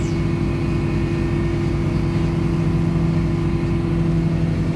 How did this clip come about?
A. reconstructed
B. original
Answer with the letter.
B